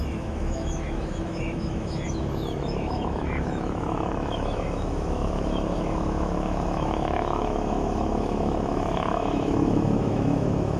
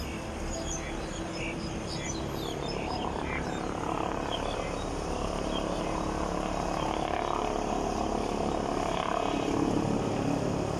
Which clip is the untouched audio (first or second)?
second